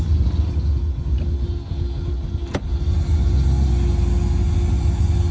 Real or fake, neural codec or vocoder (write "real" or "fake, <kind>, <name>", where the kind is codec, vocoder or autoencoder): real